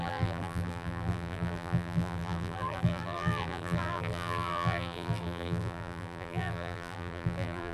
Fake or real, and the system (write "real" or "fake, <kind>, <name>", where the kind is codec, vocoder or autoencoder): fake, vocoder, BigVGAN v2